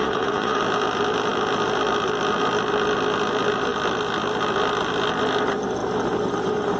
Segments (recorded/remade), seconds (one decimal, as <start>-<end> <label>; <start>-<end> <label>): 0.0-0.6 remade; 0.6-6.8 recorded